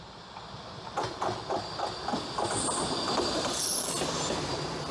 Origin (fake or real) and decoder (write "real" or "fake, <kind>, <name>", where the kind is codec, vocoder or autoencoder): real